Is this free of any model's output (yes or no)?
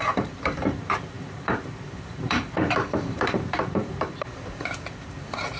no